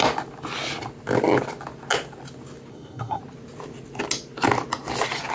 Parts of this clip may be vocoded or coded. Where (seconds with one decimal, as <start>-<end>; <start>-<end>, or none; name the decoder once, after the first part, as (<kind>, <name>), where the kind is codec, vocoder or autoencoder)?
2.7-3.2 (codec, SNAC)